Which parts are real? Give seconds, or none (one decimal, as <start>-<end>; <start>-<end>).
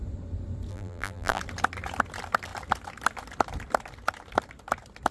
0.0-0.7; 1.4-5.1